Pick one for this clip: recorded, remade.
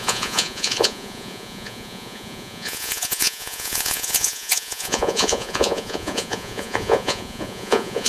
remade